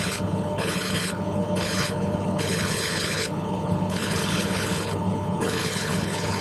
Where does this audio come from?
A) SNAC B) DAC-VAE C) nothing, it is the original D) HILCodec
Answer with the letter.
D